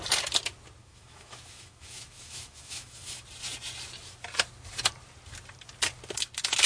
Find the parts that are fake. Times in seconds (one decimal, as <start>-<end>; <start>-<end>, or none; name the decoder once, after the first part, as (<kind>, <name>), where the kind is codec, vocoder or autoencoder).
0.8-3.2 (autoencoder, DAC-VAE)